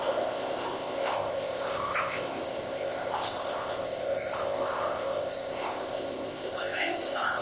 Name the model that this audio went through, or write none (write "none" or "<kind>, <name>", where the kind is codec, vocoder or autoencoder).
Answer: codec, ZipCodec